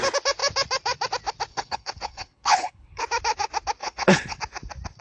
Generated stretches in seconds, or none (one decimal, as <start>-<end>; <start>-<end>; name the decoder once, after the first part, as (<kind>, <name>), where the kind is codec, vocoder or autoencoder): 1.5-3.0 (codec, HILCodec); 3.8-4.4